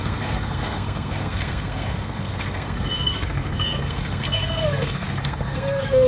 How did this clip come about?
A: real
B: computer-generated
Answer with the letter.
B